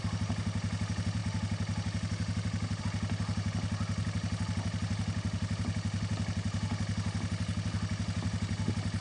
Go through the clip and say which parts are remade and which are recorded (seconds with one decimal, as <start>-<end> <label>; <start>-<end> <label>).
0.0-9.0 recorded